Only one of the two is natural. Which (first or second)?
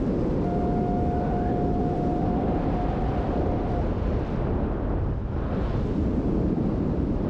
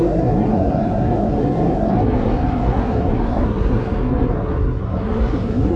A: first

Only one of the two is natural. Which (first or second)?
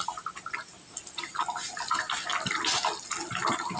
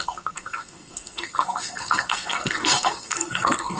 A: first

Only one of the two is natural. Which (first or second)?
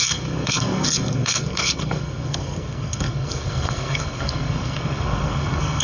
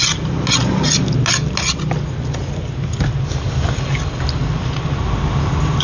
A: second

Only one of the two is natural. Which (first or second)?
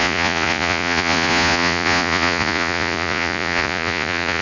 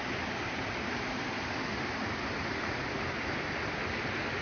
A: second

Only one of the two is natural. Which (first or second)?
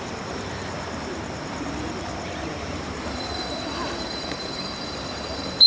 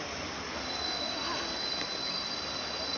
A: second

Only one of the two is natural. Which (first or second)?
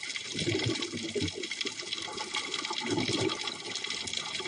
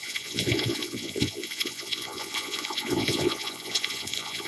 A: first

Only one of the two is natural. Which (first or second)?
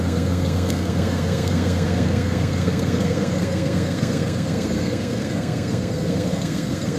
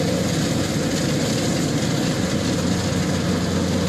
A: second